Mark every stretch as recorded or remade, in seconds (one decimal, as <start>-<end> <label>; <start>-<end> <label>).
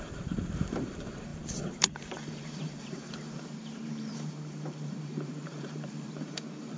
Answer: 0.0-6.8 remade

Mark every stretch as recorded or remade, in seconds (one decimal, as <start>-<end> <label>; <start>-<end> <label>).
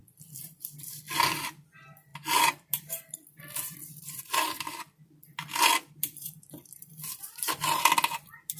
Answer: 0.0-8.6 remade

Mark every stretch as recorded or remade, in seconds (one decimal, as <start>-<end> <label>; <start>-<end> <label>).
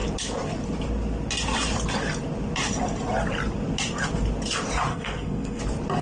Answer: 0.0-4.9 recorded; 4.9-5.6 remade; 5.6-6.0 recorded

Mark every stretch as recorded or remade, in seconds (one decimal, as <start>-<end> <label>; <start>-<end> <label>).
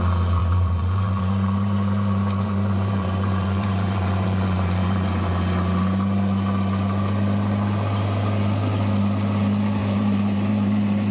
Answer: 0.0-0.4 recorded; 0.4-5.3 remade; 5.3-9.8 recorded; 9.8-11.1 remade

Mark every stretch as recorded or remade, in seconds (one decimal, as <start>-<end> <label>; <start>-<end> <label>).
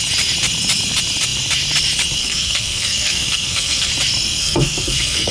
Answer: 0.0-2.2 recorded; 2.2-3.9 remade; 3.9-4.4 recorded; 4.4-5.3 remade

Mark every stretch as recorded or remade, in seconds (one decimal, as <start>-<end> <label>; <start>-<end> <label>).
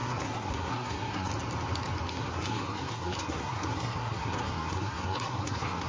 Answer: 0.0-1.3 remade; 1.3-2.1 recorded; 2.1-5.9 remade